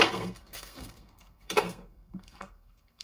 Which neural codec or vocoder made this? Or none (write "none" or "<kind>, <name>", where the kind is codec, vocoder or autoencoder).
codec, SNAC